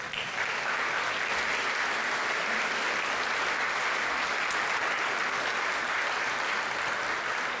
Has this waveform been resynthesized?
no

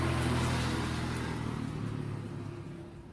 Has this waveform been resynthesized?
no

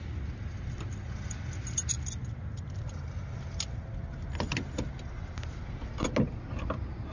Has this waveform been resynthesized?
no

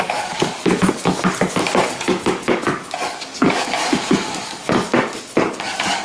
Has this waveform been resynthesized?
yes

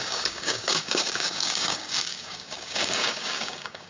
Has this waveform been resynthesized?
yes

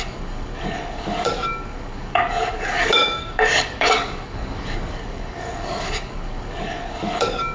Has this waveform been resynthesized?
yes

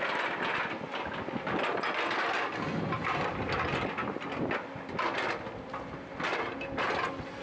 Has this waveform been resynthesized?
no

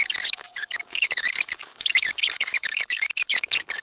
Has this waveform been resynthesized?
yes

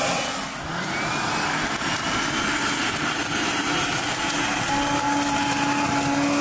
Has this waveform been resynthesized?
no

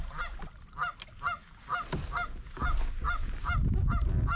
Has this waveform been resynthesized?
no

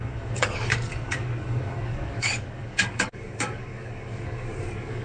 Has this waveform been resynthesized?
yes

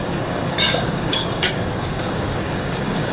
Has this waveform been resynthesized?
yes